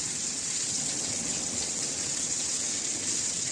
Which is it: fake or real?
fake